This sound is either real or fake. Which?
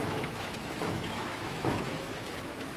fake